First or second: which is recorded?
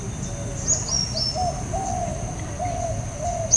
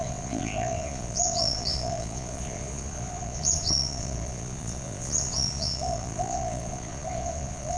first